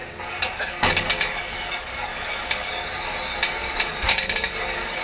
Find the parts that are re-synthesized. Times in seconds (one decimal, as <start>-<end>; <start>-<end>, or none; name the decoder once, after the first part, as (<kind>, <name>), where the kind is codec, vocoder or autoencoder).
0.0-2.7 (codec, DAC); 3.6-5.0